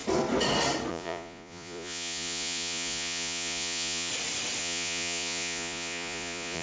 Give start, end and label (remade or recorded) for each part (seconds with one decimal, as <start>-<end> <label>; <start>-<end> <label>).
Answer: 0.0-0.9 recorded; 0.9-4.1 remade; 4.1-4.6 recorded; 4.6-6.6 remade